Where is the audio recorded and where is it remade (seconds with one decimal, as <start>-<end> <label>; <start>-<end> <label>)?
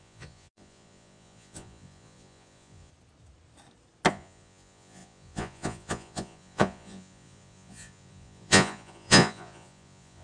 0.0-2.9 remade; 2.9-4.1 recorded; 4.1-10.2 remade